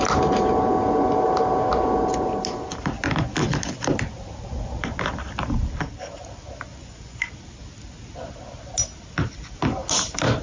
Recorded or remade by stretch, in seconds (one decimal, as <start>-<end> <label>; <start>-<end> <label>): 0.0-6.7 recorded; 6.7-7.3 remade; 7.3-10.4 recorded